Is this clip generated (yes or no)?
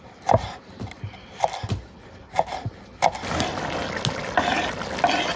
no